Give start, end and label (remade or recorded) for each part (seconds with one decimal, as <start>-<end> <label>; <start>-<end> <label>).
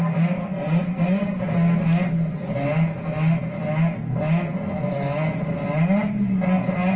0.0-0.4 recorded; 0.4-1.4 remade; 1.4-7.0 recorded